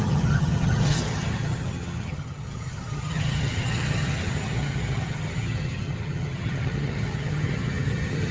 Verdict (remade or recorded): remade